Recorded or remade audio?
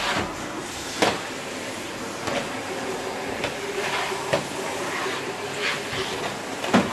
recorded